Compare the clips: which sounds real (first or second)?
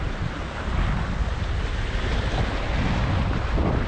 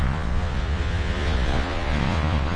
first